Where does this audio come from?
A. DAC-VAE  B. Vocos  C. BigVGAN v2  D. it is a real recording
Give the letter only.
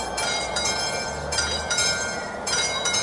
C